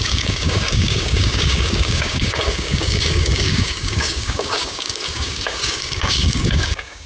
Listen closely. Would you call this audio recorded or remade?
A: remade